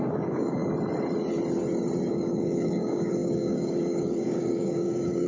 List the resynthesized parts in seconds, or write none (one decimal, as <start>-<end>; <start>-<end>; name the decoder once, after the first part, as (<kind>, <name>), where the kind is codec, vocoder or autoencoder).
0.0-0.6 (codec, DAC); 2.1-5.3